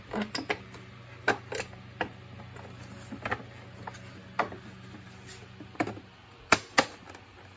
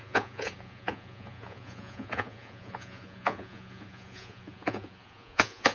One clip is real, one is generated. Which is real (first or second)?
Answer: first